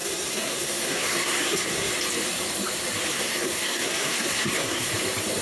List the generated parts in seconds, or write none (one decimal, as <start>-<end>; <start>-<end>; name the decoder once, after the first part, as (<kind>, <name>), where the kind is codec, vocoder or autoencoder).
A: 0.0-1.9 (codec, SNAC); 3.1-4.9